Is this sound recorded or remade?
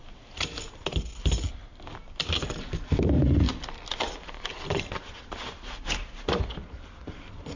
recorded